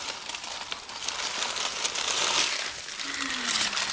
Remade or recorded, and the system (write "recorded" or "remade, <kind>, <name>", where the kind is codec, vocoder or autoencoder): recorded